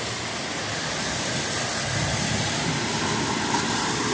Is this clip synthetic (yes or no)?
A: yes